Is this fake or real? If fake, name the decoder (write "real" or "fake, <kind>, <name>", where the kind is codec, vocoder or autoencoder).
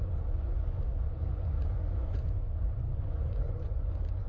fake, vocoder, Vocos